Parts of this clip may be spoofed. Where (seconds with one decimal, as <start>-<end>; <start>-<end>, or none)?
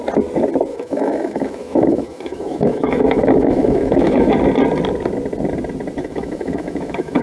0.7-4.3; 6.0-7.2